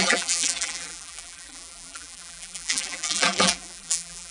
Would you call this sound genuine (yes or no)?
no